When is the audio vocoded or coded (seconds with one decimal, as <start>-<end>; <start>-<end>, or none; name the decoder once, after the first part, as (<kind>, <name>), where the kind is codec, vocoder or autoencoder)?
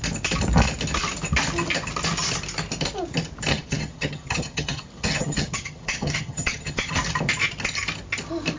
3.5-6.9 (vocoder, HiFi-GAN)